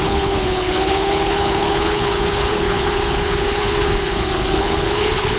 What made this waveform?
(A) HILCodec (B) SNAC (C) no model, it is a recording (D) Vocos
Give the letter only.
A